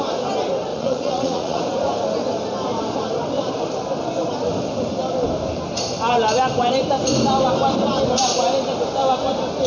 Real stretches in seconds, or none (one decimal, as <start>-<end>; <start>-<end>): 0.0-0.7; 1.6-9.7